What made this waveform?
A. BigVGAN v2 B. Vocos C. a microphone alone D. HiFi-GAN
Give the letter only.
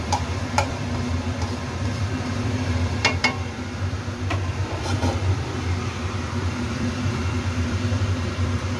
A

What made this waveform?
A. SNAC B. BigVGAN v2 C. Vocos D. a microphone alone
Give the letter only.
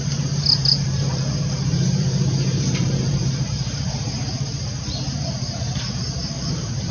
B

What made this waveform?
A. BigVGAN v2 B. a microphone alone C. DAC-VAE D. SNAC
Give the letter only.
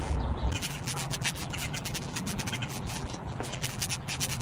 A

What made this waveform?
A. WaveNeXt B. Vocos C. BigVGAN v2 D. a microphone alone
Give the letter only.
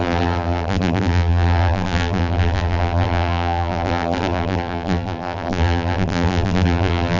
C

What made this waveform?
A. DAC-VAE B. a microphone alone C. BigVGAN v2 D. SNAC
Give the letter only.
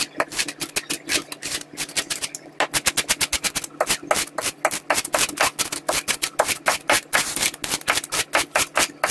B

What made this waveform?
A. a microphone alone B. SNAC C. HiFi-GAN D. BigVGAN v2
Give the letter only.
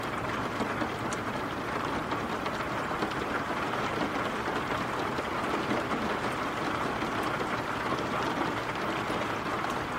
A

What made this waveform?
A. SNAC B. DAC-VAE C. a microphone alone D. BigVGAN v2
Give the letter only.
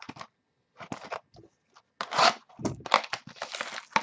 C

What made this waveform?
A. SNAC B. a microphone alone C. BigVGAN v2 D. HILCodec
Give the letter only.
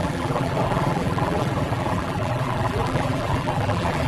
C